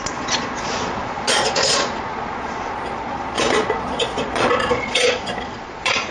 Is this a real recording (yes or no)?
no